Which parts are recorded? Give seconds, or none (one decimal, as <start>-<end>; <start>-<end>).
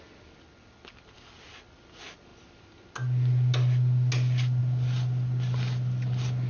0.0-6.5